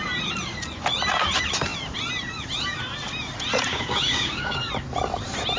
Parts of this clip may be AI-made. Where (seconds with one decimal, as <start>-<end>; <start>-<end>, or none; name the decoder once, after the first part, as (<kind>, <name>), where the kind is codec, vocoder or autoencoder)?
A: 3.7-4.7 (codec, DAC)

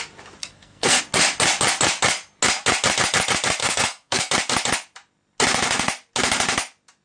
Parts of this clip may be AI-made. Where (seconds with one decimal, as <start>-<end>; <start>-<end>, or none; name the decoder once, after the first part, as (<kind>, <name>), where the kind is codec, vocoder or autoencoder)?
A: 0.4-1.0 (codec, SNAC); 3.6-4.3